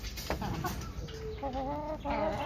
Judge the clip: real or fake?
real